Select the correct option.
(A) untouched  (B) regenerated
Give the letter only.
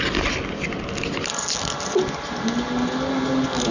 A